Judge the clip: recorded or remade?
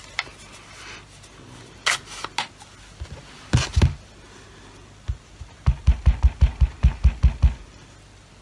recorded